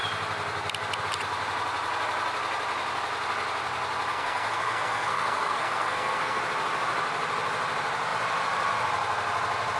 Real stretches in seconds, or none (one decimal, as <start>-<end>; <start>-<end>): 0.0-4.1; 6.4-9.8